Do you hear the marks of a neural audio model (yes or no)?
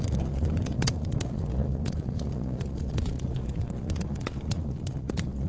yes